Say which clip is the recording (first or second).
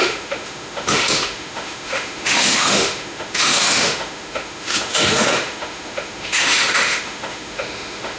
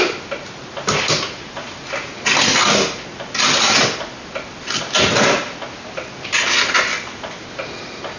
second